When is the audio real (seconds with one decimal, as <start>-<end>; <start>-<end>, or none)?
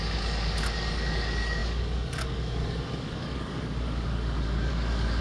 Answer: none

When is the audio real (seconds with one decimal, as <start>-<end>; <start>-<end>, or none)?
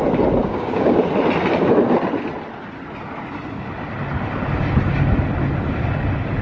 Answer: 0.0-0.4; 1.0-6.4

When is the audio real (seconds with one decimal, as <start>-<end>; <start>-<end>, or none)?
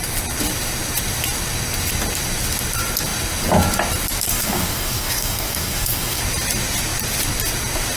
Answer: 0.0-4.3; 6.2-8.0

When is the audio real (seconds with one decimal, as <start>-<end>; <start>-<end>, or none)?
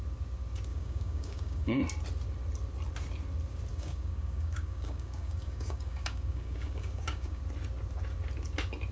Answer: 0.0-0.7; 1.8-3.7; 7.4-8.9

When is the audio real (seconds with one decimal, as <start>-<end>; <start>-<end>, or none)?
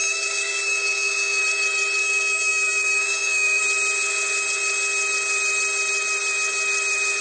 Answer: 1.4-2.0; 3.6-7.2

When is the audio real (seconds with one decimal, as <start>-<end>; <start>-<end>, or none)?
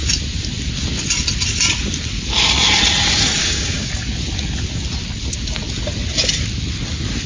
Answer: 0.0-3.4; 3.9-7.3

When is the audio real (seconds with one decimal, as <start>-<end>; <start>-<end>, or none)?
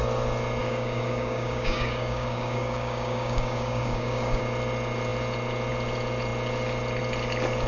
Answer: 0.0-0.6; 4.4-7.7